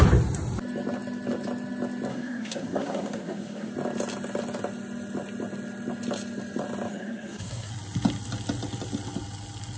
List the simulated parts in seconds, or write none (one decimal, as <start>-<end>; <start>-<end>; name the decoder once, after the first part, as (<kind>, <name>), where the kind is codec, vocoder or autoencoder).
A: 2.1-3.7 (codec, SNAC); 6.9-7.7